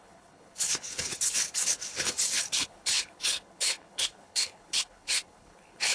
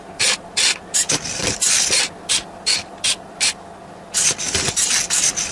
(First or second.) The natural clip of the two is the second